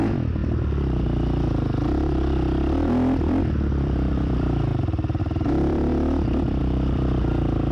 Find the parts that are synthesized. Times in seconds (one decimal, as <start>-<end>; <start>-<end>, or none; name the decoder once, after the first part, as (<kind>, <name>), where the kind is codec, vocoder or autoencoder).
0.0-0.4 (vocoder, BigVGAN v2); 3.4-4.7; 5.2-7.7